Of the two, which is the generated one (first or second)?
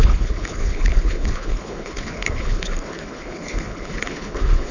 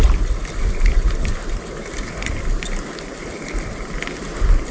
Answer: first